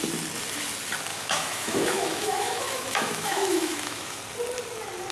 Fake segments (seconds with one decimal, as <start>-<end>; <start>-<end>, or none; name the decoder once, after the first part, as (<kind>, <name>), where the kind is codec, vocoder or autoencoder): 1.1-4.2 (autoencoder, DAC-VAE)